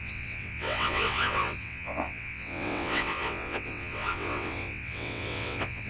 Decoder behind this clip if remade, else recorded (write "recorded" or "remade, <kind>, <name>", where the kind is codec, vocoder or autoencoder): remade, vocoder, WaveNeXt